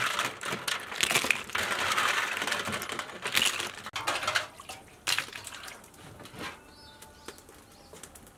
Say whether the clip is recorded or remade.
recorded